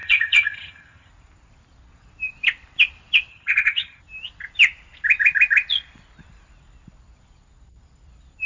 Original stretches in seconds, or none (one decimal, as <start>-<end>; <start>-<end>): 1.1-3.3; 4.0-8.5